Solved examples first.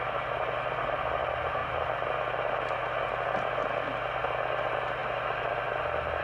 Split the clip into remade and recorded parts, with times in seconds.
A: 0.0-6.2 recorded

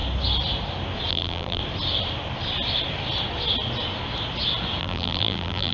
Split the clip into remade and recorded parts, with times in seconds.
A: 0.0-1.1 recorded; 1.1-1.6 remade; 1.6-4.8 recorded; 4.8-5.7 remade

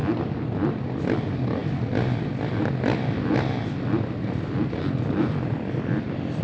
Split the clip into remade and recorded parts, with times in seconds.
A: 0.0-1.0 recorded; 1.0-1.6 remade; 1.6-4.0 recorded; 4.0-6.4 remade

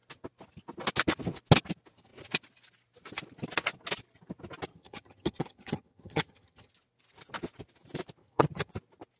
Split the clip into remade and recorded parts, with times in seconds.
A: 0.0-4.7 recorded; 4.7-6.7 remade; 6.7-8.2 recorded; 8.2-8.7 remade; 8.7-9.2 recorded

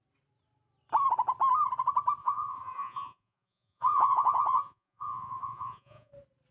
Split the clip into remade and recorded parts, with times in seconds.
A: 0.0-2.2 recorded; 2.2-6.1 remade; 6.1-6.5 recorded

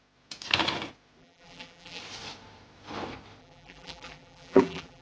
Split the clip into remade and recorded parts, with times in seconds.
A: 0.0-1.2 recorded; 1.2-2.0 remade; 2.0-3.4 recorded; 3.4-5.0 remade